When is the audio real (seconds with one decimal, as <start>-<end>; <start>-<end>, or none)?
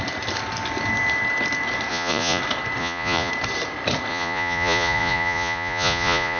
0.0-1.9; 2.4-2.8; 3.3-4.1